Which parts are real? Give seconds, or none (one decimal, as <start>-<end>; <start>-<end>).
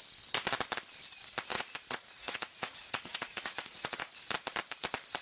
0.0-1.5; 4.1-5.2